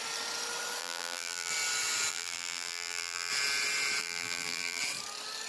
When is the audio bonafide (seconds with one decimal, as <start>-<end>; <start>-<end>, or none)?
0.0-0.8; 1.5-2.1; 3.3-4.0; 4.8-5.5